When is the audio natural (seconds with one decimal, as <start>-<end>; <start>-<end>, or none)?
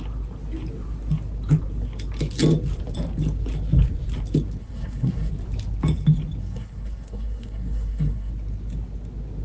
0.0-4.6; 5.3-6.4; 8.3-9.4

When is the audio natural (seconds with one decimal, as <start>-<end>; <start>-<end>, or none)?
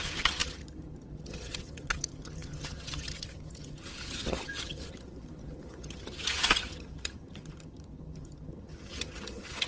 none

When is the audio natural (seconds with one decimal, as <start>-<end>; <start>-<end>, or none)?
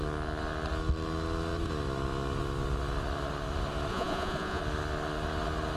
0.0-3.9; 4.6-5.8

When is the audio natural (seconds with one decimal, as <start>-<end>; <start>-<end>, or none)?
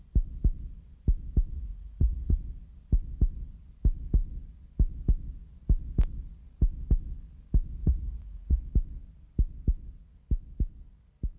0.0-1.5; 2.4-7.8; 8.6-11.4